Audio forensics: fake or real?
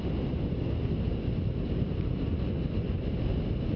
real